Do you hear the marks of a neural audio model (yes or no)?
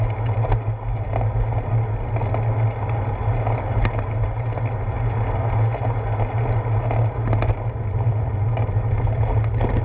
no